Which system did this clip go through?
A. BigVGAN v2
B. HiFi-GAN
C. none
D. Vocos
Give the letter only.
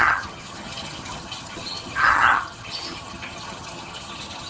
B